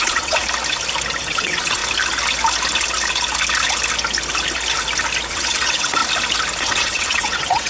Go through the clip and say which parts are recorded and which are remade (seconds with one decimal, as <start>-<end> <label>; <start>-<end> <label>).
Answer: 0.0-0.4 remade; 0.4-1.2 recorded; 1.2-1.8 remade; 1.8-5.3 recorded; 5.3-6.0 remade; 6.0-6.6 recorded; 6.6-7.7 remade

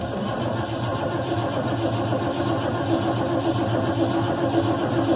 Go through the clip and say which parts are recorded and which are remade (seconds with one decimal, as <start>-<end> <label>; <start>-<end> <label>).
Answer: 0.0-5.2 recorded